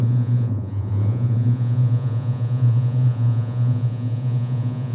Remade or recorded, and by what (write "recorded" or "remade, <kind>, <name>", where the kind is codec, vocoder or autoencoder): remade, vocoder, Vocos